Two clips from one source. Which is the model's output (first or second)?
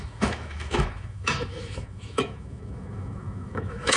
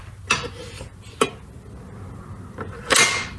first